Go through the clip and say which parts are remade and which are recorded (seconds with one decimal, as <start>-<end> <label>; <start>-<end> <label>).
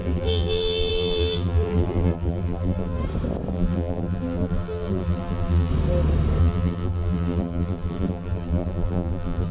0.0-3.0 remade; 3.0-3.5 recorded; 3.5-5.7 remade; 5.7-6.4 recorded; 6.4-9.5 remade